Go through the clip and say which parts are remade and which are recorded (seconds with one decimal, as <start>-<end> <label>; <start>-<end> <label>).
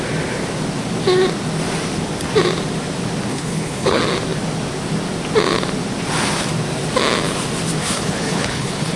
0.0-3.3 recorded; 3.3-4.0 remade; 4.0-7.8 recorded; 7.8-9.0 remade